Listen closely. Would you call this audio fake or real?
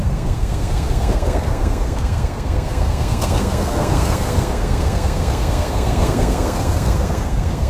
fake